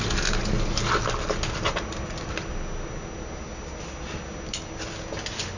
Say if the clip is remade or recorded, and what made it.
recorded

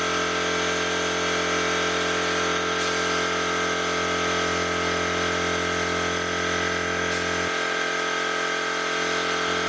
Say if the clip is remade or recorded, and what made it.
recorded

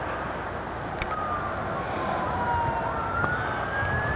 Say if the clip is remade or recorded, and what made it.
recorded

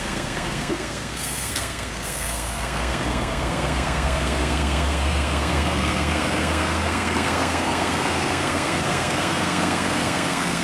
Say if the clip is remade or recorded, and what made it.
remade, codec, SNAC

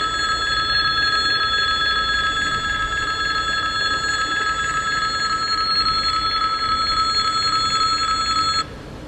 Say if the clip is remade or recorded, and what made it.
recorded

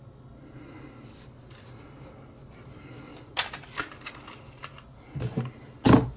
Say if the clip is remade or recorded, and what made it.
recorded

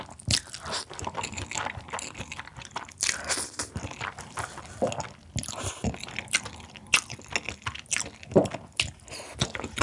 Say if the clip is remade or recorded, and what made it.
recorded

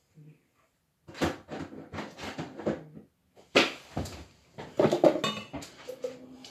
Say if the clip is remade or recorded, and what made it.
recorded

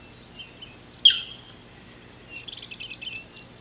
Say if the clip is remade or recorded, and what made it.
recorded